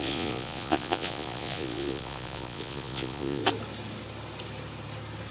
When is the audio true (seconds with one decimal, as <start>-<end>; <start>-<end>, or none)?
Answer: 3.4-5.3